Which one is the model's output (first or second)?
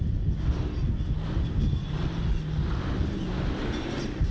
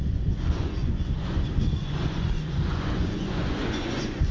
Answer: second